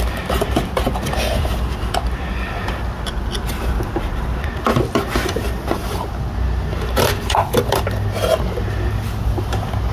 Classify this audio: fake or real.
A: real